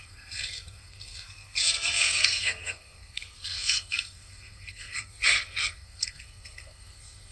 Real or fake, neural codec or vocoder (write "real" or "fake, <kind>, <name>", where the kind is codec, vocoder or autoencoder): fake, codec, SNAC